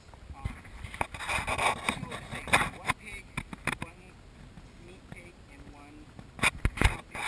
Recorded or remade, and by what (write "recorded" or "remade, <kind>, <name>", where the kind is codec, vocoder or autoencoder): recorded